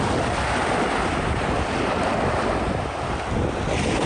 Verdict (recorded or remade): recorded